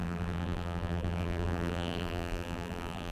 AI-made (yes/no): yes